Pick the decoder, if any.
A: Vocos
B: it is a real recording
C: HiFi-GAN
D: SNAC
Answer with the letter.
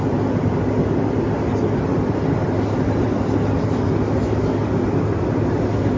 B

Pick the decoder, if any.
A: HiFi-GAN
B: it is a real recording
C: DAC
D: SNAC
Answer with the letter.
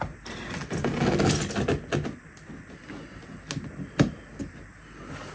B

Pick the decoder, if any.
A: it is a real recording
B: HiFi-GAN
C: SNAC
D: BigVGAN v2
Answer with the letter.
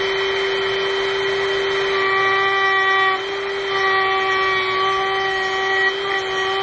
A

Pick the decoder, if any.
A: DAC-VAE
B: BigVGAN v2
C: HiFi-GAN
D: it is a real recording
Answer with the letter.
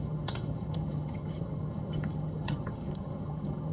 C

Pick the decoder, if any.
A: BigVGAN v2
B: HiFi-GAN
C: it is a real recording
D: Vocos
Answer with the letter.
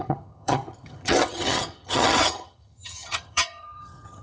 B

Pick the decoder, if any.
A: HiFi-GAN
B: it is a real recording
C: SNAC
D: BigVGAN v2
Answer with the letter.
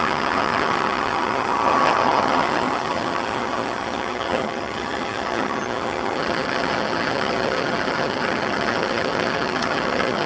A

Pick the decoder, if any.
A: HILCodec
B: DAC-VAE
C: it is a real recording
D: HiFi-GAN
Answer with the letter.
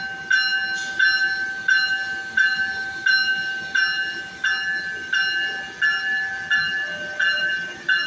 C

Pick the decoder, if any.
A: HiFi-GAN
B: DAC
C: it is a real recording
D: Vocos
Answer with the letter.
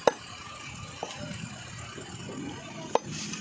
C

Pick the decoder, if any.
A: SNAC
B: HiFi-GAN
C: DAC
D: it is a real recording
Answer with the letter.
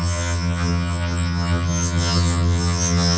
B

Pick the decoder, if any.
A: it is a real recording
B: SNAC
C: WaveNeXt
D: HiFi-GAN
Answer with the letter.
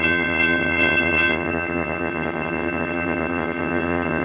D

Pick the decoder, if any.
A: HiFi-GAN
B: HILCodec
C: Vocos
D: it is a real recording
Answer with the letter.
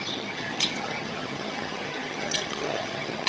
A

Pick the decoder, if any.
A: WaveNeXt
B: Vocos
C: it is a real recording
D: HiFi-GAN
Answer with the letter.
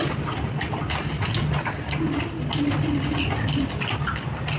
C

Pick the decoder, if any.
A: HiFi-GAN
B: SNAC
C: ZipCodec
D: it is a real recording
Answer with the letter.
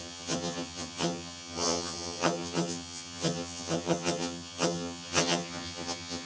A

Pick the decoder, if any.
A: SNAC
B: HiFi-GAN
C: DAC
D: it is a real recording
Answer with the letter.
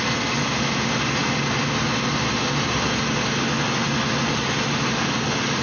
D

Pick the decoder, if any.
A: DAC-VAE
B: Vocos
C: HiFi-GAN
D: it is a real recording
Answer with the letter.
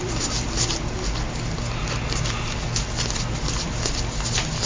D